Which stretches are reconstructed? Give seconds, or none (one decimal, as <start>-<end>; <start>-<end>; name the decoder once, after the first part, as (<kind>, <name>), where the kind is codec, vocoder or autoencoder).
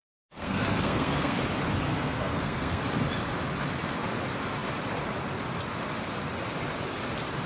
0.0-1.4 (codec, SNAC); 1.9-2.8